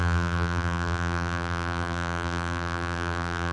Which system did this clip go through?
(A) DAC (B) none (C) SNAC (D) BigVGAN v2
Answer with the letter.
D